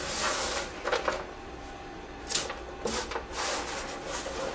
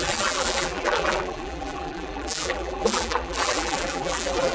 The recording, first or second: first